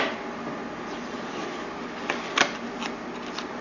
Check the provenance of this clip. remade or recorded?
recorded